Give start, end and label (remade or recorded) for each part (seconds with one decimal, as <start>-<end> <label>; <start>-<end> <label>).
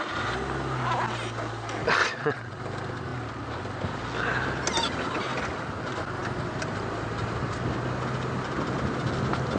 0.0-2.0 recorded; 2.0-2.6 remade; 2.6-9.6 recorded